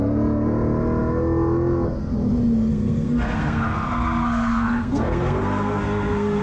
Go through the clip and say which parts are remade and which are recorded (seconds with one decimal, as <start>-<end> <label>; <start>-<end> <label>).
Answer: 0.0-2.7 recorded; 2.7-6.4 remade